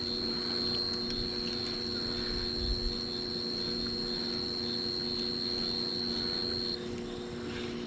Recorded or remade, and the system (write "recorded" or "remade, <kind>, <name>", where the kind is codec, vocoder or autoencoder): recorded